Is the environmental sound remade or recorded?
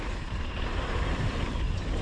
remade